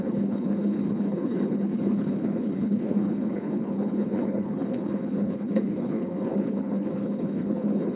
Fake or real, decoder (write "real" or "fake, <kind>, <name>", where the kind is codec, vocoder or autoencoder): fake, codec, HILCodec